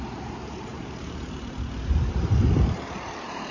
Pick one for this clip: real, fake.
fake